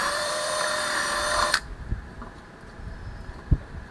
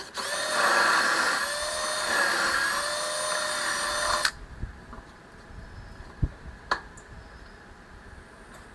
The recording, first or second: second